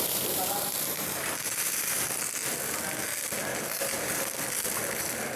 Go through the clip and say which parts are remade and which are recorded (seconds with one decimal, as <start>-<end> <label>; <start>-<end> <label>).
0.0-2.4 remade; 2.4-4.0 recorded; 4.0-5.4 remade